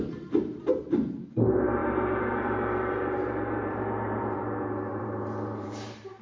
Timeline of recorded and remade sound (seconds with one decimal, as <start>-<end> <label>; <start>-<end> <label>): 0.0-6.2 remade